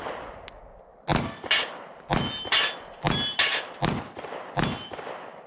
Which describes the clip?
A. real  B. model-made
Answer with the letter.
A